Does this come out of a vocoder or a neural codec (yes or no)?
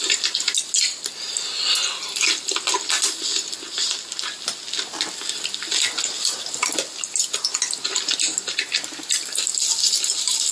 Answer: no